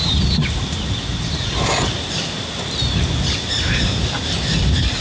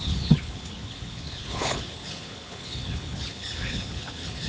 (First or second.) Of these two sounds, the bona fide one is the first